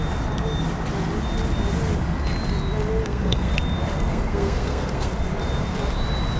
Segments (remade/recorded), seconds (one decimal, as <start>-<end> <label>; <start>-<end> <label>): 0.0-3.0 recorded; 3.0-3.5 remade; 3.5-4.1 recorded; 4.1-5.1 remade; 5.1-6.4 recorded